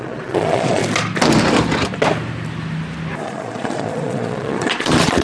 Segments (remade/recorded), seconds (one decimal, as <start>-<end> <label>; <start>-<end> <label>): 0.0-0.8 remade; 0.8-3.2 recorded; 3.2-5.2 remade